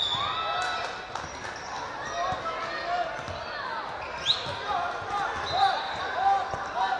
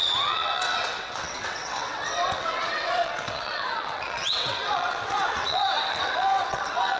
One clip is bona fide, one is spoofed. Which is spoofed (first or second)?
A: second